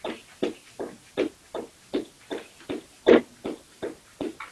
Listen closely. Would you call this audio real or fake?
real